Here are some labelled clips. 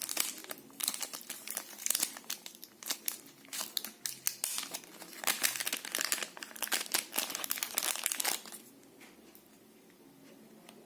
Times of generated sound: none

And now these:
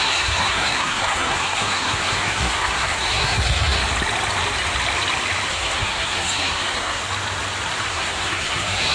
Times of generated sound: 0.0-3.8 (codec, SNAC); 5.5-7.0; 7.9-8.9

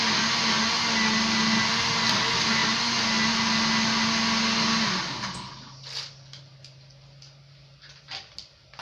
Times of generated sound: none